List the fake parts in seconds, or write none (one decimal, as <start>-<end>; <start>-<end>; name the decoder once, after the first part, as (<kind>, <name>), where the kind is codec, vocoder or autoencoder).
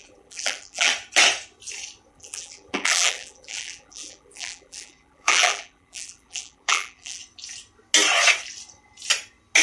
0.0-0.9 (vocoder, BigVGAN v2); 2.1-7.2